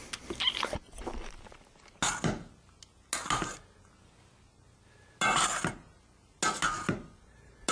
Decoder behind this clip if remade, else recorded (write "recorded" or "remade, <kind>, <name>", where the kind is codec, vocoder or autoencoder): recorded